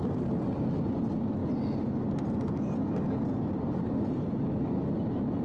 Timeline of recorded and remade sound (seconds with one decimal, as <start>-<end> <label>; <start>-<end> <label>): 0.0-5.4 recorded